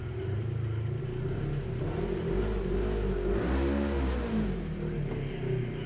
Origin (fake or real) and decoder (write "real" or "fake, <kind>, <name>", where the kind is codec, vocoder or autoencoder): real